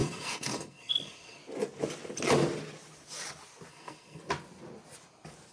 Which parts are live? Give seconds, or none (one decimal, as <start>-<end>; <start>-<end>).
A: 1.4-3.7; 4.2-5.5

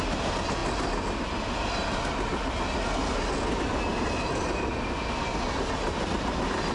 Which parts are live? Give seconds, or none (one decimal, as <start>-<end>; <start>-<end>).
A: 0.0-6.7

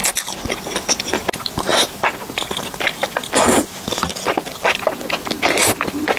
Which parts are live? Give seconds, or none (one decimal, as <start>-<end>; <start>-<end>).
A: 0.0-6.2

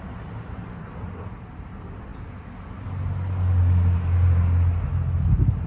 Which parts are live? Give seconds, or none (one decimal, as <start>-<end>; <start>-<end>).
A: 0.0-5.7

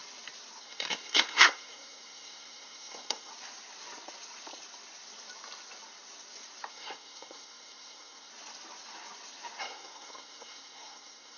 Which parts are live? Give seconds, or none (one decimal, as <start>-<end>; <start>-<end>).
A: 0.0-0.6; 3.3-6.7; 8.3-9.6

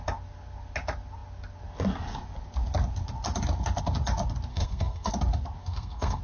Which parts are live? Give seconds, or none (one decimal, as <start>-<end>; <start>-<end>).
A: 0.0-4.5; 5.1-5.6

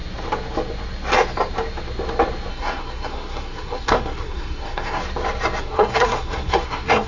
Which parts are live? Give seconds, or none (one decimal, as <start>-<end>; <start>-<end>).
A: 0.0-2.5; 5.0-5.6